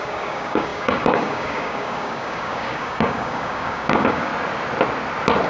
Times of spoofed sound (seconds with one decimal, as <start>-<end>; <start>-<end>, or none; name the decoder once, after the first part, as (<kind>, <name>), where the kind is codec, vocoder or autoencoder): 0.0-4.3 (codec, DAC)